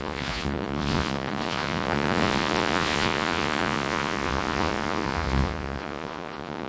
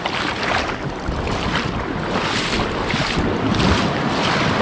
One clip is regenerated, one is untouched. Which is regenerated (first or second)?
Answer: first